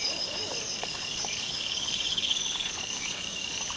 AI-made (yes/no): yes